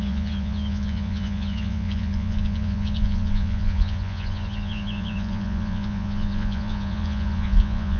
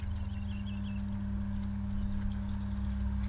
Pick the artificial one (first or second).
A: first